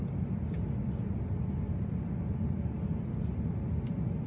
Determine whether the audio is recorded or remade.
recorded